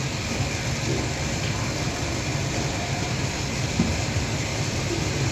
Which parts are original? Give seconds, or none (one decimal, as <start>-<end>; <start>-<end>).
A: 0.0-4.5